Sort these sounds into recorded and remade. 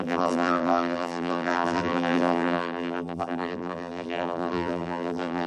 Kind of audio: remade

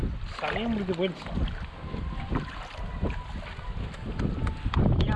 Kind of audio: recorded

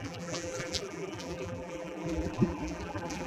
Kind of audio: remade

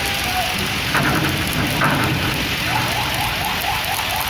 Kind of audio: recorded